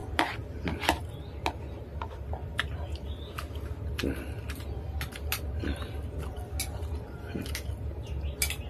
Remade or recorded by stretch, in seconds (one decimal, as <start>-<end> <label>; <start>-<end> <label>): 0.0-8.7 recorded